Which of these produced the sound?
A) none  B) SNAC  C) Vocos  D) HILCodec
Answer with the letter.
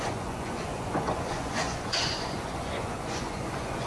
C